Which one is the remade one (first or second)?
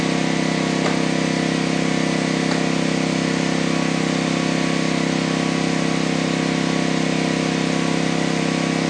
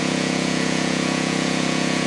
second